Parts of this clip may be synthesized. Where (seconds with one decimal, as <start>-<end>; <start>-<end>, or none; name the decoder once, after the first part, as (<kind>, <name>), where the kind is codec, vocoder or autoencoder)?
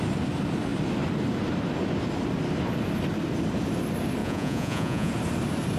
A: 4.2-5.1 (vocoder, Vocos)